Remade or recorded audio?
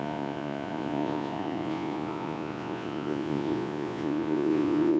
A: remade